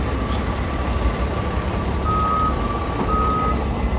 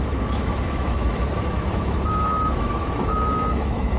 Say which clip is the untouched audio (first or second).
first